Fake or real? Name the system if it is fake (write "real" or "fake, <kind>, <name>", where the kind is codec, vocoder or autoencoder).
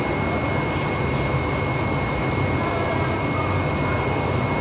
real